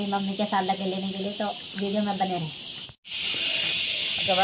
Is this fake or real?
real